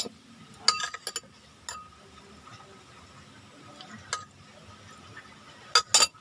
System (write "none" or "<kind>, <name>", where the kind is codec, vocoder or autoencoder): none